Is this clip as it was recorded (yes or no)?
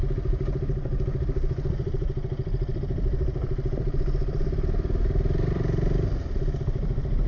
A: no